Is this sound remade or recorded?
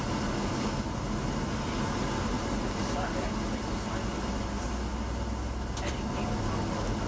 recorded